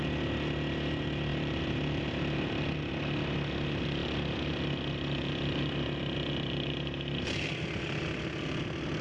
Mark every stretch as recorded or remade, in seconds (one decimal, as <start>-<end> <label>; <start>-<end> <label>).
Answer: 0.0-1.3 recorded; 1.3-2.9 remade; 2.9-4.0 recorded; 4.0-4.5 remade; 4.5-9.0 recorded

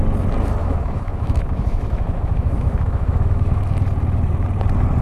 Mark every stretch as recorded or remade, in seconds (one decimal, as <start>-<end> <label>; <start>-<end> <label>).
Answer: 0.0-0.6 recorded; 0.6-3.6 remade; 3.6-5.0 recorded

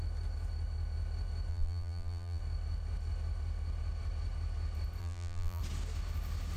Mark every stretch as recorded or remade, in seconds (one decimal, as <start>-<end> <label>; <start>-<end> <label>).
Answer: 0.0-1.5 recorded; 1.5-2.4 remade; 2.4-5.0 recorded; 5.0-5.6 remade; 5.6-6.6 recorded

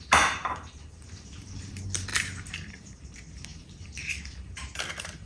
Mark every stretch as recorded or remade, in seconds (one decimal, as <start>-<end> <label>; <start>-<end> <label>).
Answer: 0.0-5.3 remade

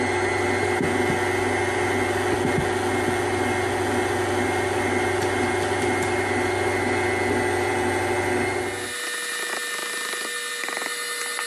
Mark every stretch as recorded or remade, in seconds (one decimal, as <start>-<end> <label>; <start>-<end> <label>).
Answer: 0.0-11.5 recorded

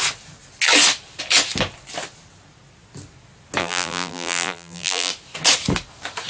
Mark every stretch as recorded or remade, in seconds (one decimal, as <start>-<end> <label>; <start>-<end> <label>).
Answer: 0.0-3.6 recorded; 3.6-5.1 remade; 5.1-6.3 recorded